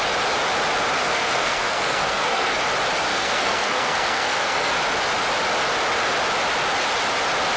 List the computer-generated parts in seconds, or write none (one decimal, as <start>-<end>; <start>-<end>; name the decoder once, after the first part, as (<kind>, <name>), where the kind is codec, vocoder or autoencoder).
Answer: 1.0-2.6 (codec, SNAC); 3.1-4.7